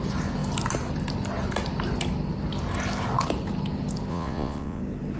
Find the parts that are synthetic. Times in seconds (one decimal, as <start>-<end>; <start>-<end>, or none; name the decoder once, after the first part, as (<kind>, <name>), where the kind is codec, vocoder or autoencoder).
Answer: 4.1-4.8 (vocoder, Vocos)